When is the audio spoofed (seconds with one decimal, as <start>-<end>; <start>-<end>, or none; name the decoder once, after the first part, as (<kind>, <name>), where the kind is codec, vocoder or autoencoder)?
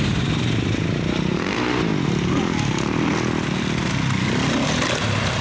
0.0-1.9 (vocoder, BigVGAN v2)